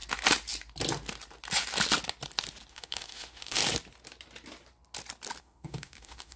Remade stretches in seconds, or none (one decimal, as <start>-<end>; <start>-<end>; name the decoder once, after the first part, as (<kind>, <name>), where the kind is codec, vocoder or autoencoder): 2.7-3.6 (autoencoder, DAC-VAE); 5.4-6.4